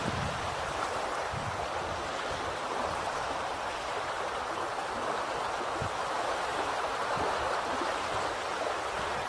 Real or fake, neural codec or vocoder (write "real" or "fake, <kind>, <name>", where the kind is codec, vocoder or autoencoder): fake, vocoder, BigVGAN v2